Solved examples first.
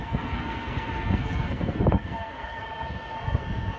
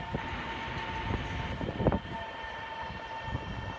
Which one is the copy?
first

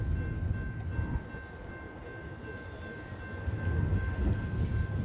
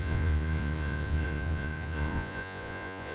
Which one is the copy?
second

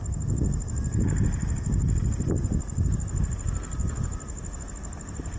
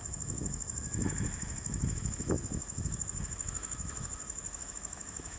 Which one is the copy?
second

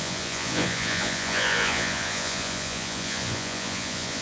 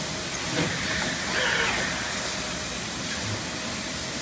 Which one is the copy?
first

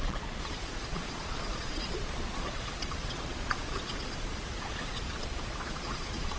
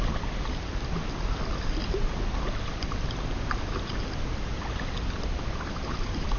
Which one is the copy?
first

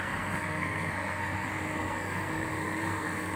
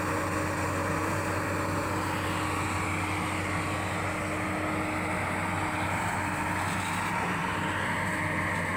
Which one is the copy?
first